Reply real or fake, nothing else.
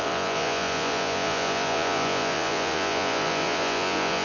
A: fake